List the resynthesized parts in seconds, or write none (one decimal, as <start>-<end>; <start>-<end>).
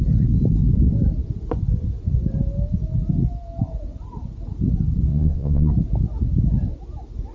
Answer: 5.1-5.7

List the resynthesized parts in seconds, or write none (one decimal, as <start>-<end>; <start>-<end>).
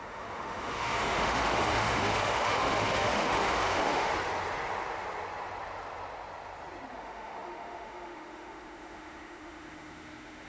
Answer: 0.0-4.1; 6.9-10.5